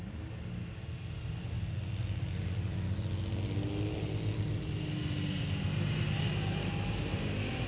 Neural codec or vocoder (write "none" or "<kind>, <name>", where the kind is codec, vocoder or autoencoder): none